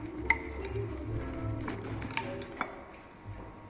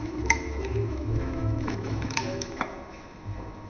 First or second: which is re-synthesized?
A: second